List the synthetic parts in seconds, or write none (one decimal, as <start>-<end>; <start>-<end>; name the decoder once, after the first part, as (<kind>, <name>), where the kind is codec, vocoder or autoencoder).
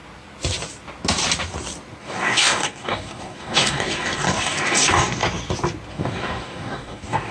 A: 2.0-5.2 (codec, DAC); 5.9-7.3